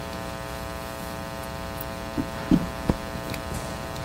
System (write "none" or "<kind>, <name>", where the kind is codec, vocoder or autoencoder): none